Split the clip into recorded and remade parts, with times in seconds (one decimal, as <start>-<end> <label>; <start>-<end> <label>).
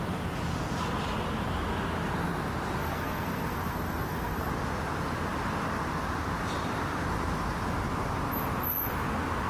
0.0-2.8 recorded; 2.8-4.5 remade; 4.5-9.5 recorded